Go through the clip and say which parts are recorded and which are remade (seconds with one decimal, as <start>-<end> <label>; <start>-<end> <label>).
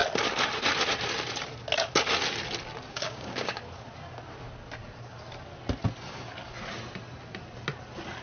0.0-2.9 recorded; 2.9-3.6 remade; 3.6-8.2 recorded